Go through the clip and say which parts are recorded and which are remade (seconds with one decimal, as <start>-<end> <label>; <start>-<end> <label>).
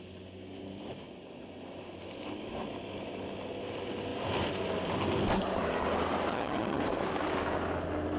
0.0-6.3 recorded; 6.3-6.8 remade; 6.8-8.2 recorded